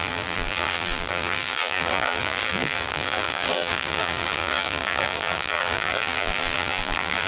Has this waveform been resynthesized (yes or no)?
yes